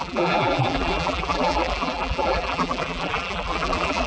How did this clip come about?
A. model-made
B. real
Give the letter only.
A